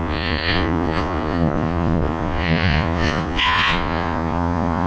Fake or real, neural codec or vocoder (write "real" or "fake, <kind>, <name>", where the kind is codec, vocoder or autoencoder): fake, vocoder, Vocos